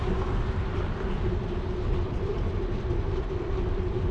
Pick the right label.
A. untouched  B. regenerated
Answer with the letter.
A